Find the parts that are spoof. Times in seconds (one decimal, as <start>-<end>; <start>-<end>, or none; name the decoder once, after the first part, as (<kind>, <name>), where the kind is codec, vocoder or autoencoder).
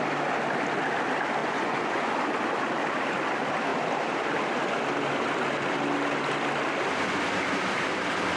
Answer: 1.4-2.1 (vocoder, Vocos)